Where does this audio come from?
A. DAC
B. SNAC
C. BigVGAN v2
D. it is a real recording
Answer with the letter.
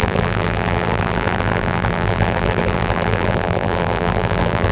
C